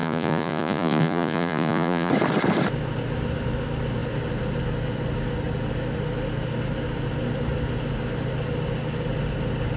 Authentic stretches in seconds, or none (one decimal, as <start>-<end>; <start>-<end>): 2.1-9.8